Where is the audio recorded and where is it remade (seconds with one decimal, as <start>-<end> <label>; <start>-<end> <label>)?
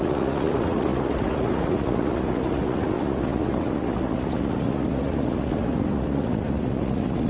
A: 0.0-7.3 remade